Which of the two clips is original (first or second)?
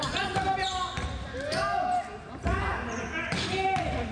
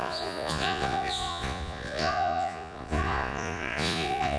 first